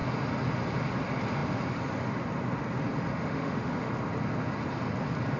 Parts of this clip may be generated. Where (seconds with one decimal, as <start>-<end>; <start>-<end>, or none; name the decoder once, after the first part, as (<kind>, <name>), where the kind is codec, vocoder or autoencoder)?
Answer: 3.1-3.9 (autoencoder, DAC-VAE)